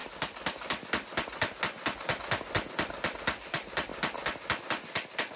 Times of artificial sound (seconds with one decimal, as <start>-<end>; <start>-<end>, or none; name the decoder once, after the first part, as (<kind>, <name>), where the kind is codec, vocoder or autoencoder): none